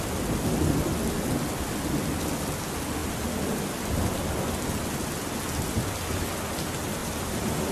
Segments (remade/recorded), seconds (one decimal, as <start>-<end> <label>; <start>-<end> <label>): 0.0-7.0 recorded; 7.0-7.7 remade